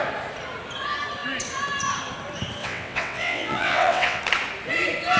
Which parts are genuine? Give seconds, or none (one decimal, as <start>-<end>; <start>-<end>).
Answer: 0.0-2.6; 4.2-5.2